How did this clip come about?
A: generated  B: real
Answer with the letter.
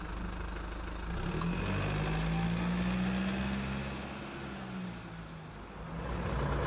B